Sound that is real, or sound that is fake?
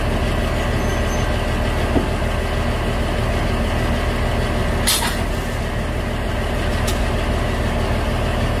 real